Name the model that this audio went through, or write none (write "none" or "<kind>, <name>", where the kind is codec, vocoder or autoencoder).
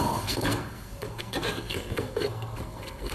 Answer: codec, SNAC